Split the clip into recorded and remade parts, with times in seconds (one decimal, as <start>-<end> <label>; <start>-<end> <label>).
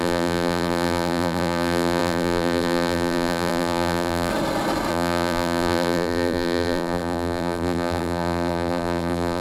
0.0-4.3 remade; 4.3-4.9 recorded; 4.9-9.4 remade